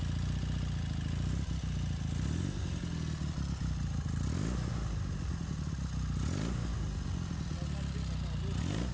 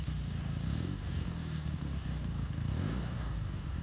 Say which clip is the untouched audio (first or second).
first